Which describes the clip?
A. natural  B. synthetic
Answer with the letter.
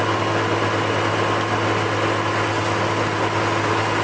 A